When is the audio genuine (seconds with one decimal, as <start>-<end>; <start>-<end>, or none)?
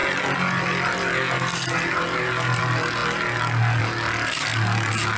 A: 3.0-3.8; 4.5-5.2